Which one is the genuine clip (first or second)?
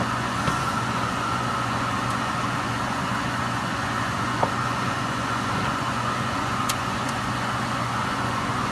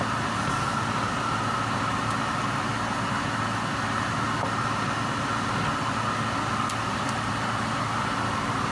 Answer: second